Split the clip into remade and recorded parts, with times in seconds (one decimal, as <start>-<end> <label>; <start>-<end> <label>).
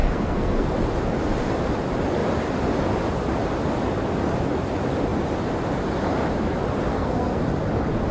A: 0.0-0.7 remade; 0.7-6.9 recorded; 6.9-7.4 remade; 7.4-8.1 recorded